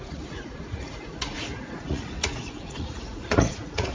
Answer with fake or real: fake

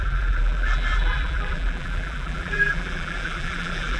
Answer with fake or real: fake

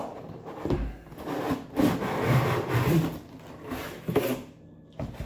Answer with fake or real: real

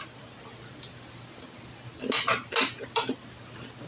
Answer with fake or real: real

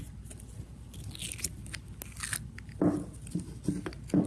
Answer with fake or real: real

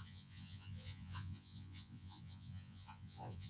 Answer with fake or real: fake